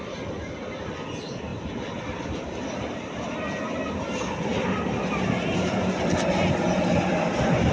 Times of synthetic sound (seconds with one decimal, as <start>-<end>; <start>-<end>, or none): 1.5-3.2; 4.5-6.3